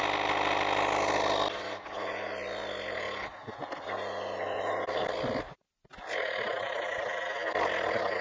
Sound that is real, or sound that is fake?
real